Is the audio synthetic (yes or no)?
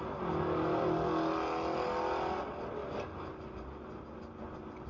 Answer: no